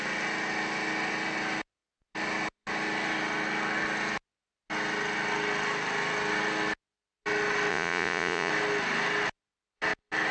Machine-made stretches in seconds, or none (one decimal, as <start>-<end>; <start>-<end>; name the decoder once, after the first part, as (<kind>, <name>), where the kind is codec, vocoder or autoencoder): 7.7-8.5 (vocoder, Vocos)